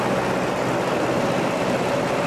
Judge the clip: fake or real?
real